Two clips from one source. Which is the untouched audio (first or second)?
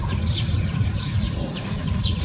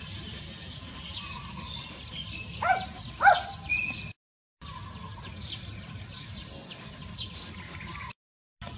second